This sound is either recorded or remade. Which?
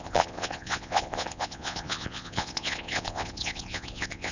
remade